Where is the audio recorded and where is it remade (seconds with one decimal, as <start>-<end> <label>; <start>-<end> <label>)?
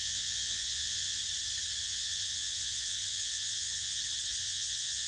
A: 0.0-1.2 remade; 1.2-1.8 recorded; 1.8-4.0 remade; 4.0-4.4 recorded; 4.4-5.1 remade